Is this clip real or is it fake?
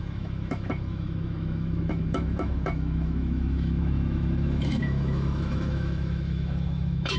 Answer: fake